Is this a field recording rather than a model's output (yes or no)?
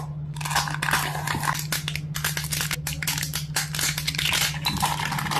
yes